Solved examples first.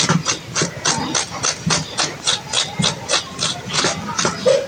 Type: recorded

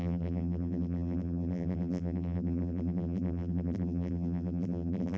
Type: remade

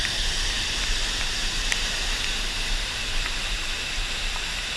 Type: remade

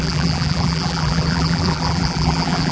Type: remade